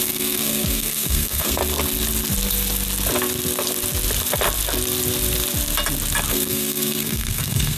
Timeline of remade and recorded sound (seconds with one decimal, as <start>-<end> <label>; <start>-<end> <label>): 0.0-1.6 remade; 1.6-6.3 recorded; 6.3-7.8 remade